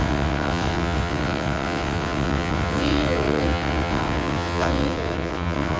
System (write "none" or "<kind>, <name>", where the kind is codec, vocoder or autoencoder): vocoder, WaveNeXt